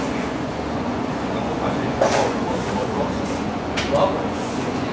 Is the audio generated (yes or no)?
yes